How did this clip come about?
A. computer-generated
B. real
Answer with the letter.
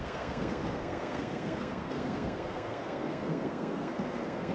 A